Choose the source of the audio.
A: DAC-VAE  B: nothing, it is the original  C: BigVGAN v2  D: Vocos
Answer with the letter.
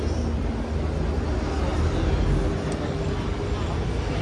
B